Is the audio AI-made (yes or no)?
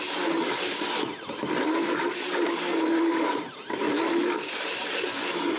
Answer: no